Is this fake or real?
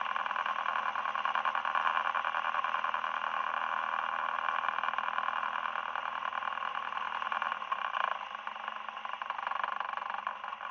real